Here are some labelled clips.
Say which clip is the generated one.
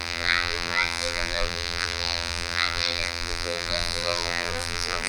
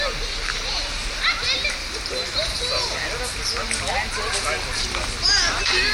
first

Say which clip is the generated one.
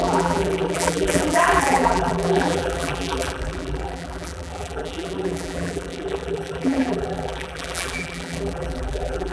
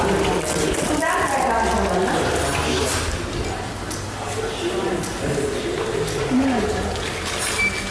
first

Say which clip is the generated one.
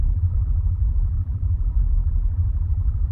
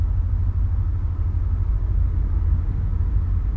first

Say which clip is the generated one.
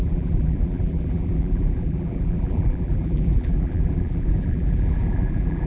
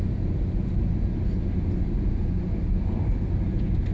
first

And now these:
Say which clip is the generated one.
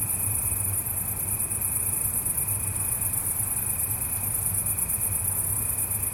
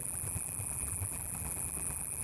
second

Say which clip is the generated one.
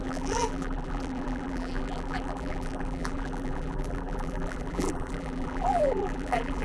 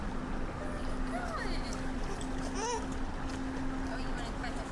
first